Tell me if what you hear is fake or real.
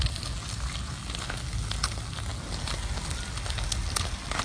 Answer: real